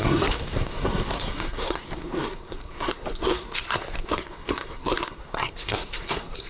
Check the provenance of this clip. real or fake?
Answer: fake